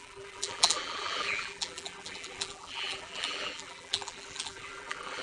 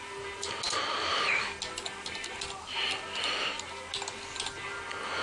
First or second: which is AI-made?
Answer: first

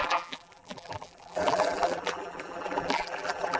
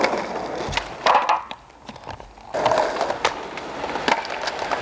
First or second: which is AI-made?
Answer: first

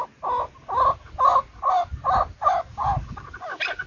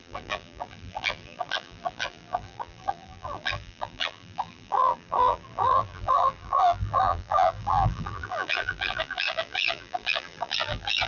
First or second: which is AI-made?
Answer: second